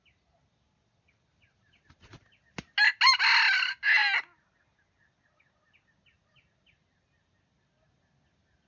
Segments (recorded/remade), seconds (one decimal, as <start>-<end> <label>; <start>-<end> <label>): 0.0-8.7 recorded